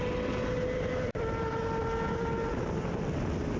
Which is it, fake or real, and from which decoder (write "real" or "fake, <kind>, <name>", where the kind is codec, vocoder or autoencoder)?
real